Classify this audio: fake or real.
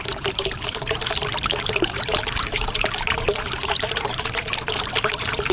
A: fake